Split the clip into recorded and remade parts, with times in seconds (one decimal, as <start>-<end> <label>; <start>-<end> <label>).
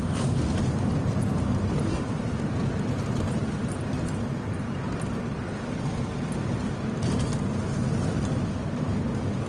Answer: 0.0-9.5 recorded